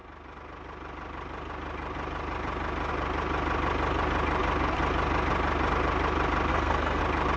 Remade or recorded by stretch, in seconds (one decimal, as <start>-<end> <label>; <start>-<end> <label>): 0.0-6.5 recorded; 6.5-7.0 remade; 7.0-7.4 recorded